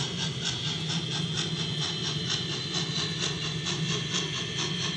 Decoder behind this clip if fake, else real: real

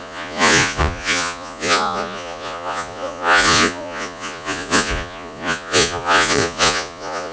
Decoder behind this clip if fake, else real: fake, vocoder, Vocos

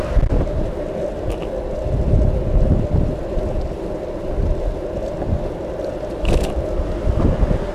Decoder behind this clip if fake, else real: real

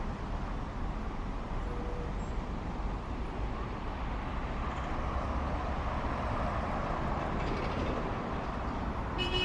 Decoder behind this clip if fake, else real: real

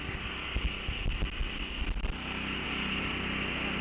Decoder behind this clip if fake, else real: real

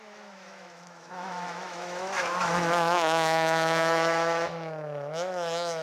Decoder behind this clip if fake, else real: fake, autoencoder, DAC-VAE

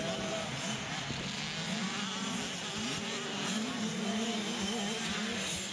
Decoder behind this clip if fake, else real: real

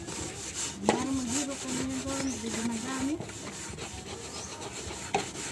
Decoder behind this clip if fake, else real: real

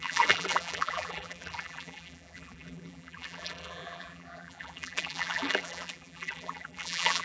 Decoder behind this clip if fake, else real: fake, vocoder, BigVGAN v2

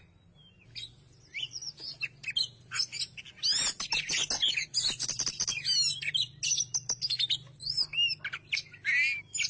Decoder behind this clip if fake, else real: real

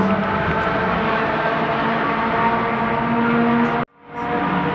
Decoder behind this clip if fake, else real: real